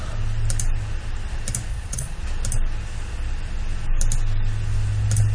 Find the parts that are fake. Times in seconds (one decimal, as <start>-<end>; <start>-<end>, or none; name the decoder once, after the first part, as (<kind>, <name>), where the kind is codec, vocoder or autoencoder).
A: 1.7-2.2 (vocoder, Vocos)